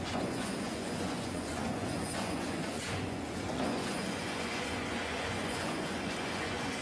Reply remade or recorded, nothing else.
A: remade